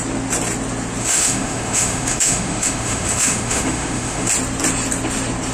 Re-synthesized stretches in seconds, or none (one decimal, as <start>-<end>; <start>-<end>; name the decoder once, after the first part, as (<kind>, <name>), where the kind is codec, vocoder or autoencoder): 1.0-4.3 (autoencoder, DAC-VAE)